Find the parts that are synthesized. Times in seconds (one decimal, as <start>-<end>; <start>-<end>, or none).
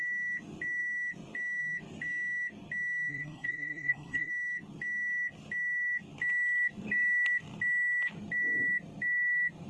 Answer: 3.1-4.3